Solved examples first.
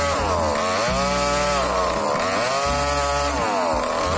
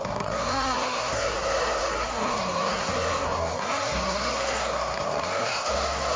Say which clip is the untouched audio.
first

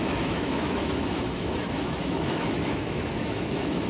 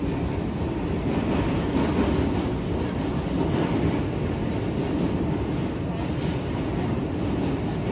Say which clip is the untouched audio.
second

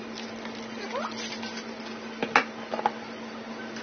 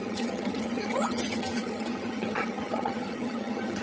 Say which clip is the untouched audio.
first